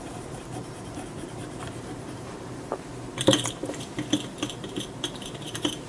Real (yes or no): no